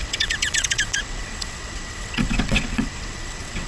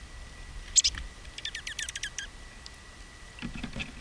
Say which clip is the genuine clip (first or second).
second